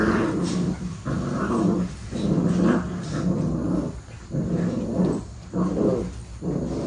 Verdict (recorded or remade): recorded